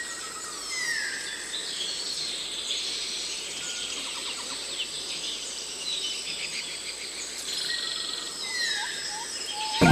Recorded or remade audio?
remade